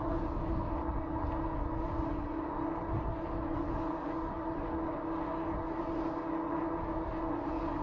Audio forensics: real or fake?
real